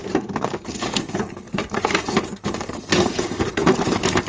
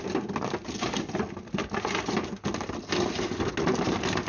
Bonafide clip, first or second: second